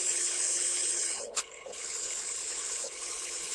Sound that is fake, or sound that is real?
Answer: fake